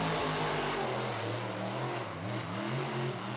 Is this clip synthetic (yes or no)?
no